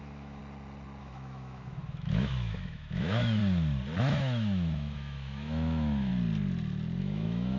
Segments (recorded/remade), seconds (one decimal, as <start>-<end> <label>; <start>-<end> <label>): 0.0-0.4 remade; 0.4-1.0 recorded; 1.0-3.4 remade; 3.4-4.0 recorded; 4.0-6.1 remade; 6.1-7.0 recorded; 7.0-7.6 remade